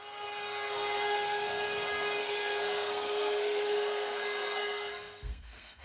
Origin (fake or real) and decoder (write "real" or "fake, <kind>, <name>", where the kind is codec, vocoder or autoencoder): fake, codec, SNAC